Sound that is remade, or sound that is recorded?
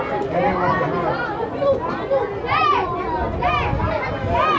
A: recorded